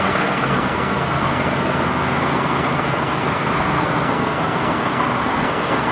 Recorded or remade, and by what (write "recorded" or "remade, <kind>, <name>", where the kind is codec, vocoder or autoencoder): remade, codec, SNAC